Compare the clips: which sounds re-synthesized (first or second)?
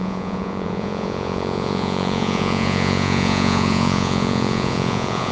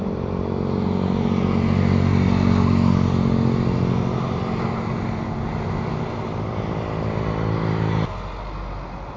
first